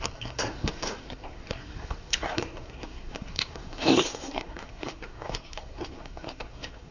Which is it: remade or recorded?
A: remade